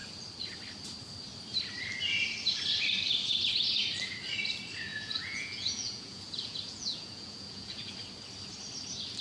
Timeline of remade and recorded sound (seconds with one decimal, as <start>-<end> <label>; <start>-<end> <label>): 0.0-4.9 recorded; 4.9-7.9 remade; 7.9-9.2 recorded